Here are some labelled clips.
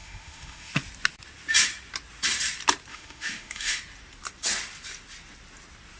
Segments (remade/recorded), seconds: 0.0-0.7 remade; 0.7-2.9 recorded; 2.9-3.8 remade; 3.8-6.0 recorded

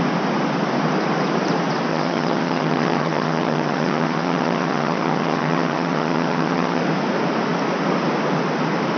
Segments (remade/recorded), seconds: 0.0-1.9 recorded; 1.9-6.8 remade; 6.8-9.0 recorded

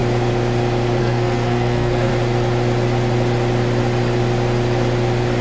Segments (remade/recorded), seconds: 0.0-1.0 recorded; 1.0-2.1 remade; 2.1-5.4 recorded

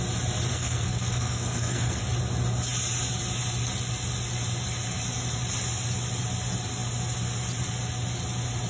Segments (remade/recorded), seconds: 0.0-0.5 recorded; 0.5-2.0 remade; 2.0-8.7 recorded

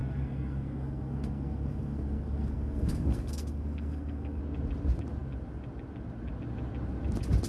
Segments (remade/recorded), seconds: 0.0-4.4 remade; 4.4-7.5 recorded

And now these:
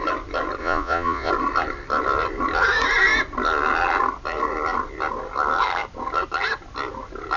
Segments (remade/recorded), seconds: 0.0-0.6 recorded; 0.6-1.3 remade; 1.3-7.4 recorded